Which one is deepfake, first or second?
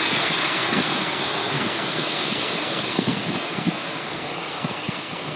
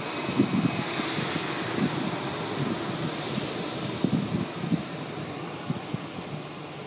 first